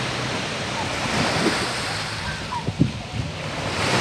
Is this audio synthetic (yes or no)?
no